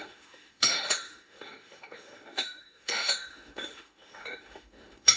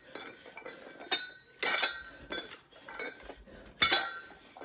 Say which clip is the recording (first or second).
second